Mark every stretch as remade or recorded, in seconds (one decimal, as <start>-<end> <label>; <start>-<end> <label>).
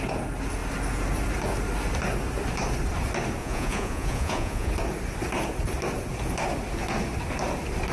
0.0-3.4 recorded; 3.4-4.7 remade; 4.7-7.9 recorded